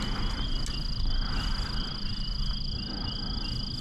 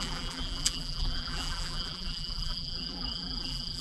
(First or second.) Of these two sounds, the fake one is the second